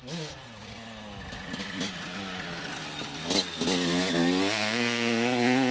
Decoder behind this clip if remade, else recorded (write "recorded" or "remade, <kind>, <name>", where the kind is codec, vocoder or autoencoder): recorded